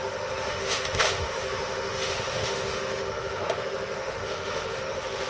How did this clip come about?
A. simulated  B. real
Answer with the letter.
A